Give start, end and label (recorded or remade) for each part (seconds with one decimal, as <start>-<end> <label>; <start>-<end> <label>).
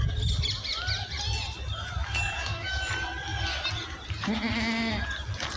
0.0-2.0 recorded; 2.0-2.9 remade; 2.9-5.6 recorded